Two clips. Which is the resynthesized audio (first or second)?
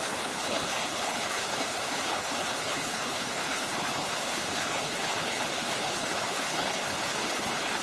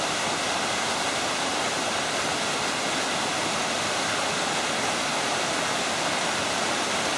first